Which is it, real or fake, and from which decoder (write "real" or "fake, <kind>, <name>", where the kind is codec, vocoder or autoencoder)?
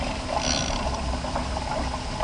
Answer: real